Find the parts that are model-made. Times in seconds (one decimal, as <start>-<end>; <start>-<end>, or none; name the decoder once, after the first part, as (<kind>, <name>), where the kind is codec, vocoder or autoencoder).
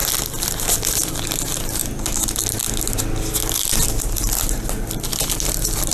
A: none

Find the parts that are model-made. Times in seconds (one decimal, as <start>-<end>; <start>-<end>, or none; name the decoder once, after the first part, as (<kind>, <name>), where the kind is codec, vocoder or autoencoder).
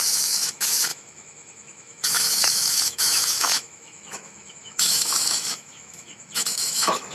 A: 0.0-7.1 (autoencoder, DAC-VAE)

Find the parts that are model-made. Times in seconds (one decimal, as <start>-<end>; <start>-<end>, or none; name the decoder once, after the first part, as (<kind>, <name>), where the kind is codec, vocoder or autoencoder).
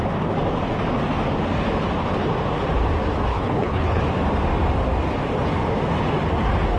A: 3.3-4.0 (codec, HILCodec)